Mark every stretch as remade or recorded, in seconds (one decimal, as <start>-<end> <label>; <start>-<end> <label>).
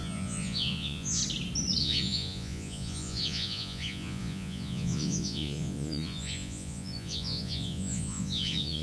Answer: 0.0-1.2 remade; 1.2-1.8 recorded; 1.8-8.8 remade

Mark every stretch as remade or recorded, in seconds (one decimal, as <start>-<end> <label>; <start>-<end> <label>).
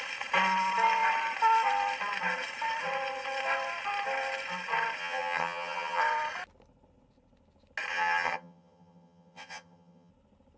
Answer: 0.0-5.0 recorded; 5.0-6.0 remade; 6.0-7.9 recorded; 7.9-10.1 remade; 10.1-10.6 recorded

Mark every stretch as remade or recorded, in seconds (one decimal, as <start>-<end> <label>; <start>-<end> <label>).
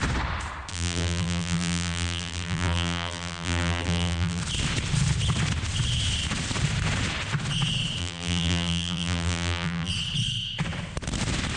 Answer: 0.0-0.7 recorded; 0.7-4.4 remade; 4.4-8.0 recorded; 8.0-9.9 remade; 9.9-11.6 recorded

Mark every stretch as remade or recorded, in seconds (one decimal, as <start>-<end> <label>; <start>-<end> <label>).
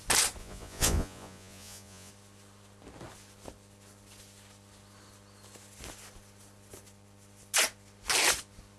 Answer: 0.0-0.4 recorded; 0.4-2.1 remade; 2.1-8.8 recorded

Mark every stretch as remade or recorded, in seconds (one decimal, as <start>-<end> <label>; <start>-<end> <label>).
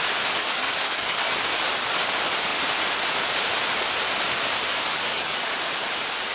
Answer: 0.0-0.4 recorded; 0.4-1.2 remade; 1.2-4.9 recorded; 4.9-5.5 remade; 5.5-6.3 recorded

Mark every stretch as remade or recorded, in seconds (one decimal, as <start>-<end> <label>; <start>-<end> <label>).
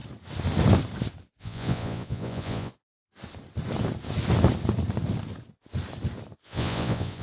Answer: 0.0-1.4 recorded; 1.4-3.1 remade; 3.1-6.4 recorded; 6.4-7.2 remade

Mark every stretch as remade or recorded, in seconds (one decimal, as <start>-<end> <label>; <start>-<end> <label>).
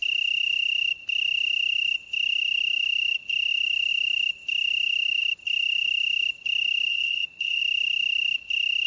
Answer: 0.0-6.9 recorded; 6.9-7.6 remade; 7.6-8.9 recorded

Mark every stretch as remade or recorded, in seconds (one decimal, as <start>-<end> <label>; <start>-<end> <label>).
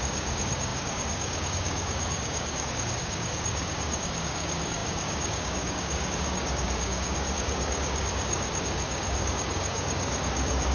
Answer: 0.0-10.7 remade